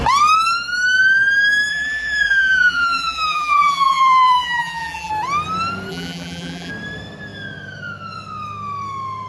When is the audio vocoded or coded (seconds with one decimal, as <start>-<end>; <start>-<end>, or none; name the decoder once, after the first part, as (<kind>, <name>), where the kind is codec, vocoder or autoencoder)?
1.7-5.1 (vocoder, BigVGAN v2); 5.9-6.7